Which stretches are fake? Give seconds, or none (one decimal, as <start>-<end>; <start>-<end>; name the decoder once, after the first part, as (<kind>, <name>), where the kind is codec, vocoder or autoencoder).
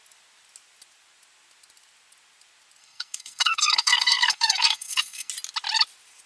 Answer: 2.8-5.3 (codec, SNAC)